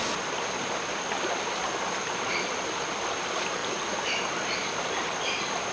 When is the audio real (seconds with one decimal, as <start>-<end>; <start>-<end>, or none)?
0.0-5.7